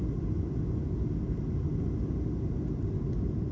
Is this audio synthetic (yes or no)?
no